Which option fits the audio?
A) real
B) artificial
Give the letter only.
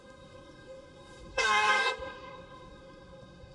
B